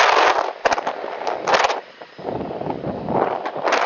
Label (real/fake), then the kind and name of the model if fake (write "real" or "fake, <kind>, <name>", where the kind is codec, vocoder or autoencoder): real